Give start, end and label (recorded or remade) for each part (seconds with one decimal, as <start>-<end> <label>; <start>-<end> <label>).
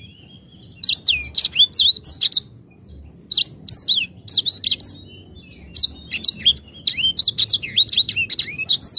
0.0-5.5 recorded; 5.5-6.4 remade; 6.4-9.0 recorded